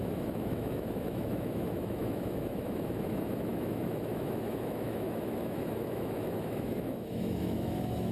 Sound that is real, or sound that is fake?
fake